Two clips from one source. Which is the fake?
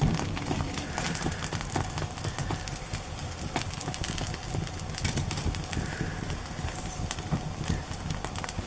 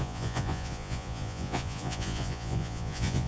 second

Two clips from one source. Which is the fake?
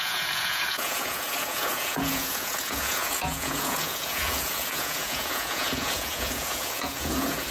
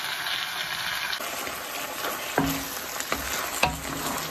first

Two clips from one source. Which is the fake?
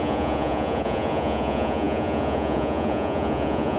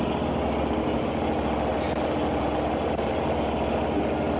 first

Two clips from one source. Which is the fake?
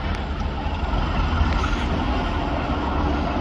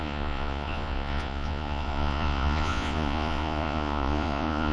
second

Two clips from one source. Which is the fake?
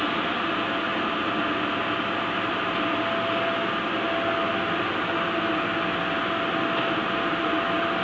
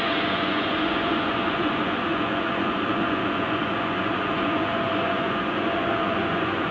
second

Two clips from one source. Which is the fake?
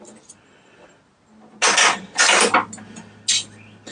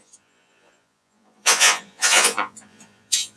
second